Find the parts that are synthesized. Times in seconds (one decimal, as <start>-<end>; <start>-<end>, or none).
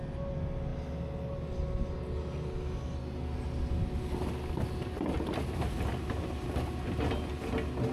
none